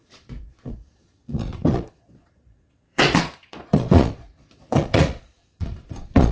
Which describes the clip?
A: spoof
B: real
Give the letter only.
A